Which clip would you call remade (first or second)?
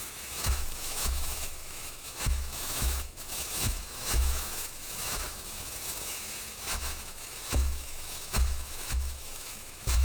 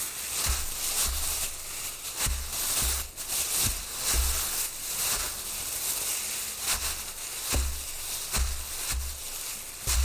first